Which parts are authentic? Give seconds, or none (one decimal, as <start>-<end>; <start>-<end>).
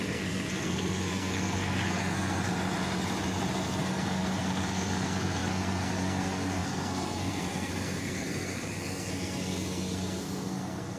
2.5-3.5